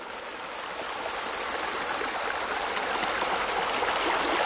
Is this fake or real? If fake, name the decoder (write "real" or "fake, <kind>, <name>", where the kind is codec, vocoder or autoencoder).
real